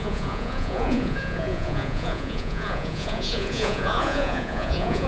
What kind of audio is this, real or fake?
fake